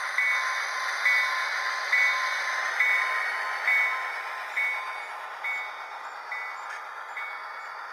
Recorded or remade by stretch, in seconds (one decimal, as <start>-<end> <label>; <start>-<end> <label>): 0.0-7.9 recorded